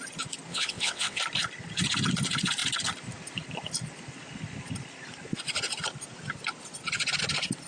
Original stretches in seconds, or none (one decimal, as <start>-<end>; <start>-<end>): 0.0-0.5; 1.2-7.7